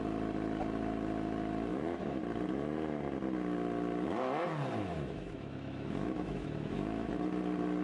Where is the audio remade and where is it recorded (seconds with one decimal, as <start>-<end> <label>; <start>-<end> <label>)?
0.0-1.7 recorded; 1.7-2.2 remade; 2.2-4.9 recorded; 4.9-7.1 remade; 7.1-7.8 recorded